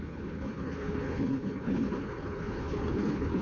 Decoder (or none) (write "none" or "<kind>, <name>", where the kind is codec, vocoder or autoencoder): codec, HILCodec